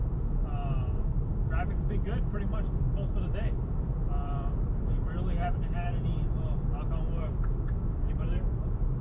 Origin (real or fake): fake